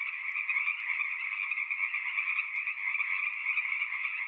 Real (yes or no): yes